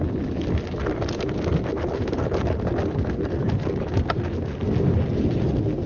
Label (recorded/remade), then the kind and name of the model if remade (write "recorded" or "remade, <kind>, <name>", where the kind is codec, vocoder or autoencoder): recorded